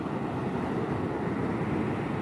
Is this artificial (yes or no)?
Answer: no